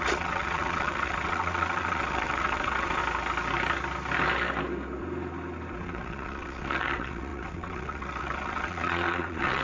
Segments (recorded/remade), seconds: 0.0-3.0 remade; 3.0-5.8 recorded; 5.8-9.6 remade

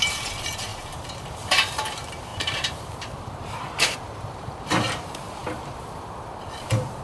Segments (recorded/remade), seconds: 0.0-7.0 remade

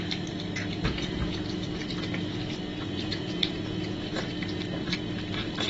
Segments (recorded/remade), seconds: 0.0-0.6 recorded; 0.6-1.8 remade; 1.8-2.7 recorded; 2.7-4.2 remade; 4.2-5.7 recorded

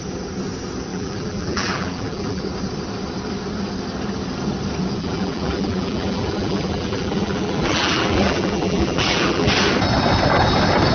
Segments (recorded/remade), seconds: 0.0-0.9 recorded; 0.9-2.4 remade; 2.4-5.0 recorded; 5.0-9.5 remade; 9.5-10.9 recorded

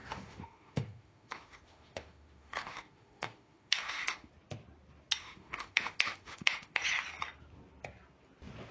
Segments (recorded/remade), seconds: 0.0-4.3 remade; 4.3-5.2 recorded; 5.2-6.8 remade; 6.8-8.7 recorded

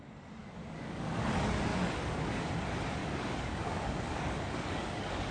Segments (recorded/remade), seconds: 0.0-0.4 recorded; 0.4-1.1 remade; 1.1-1.7 recorded; 1.7-2.5 remade; 2.5-3.0 recorded; 3.0-5.3 remade